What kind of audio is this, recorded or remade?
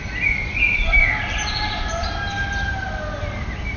recorded